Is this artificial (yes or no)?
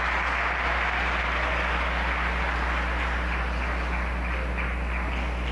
no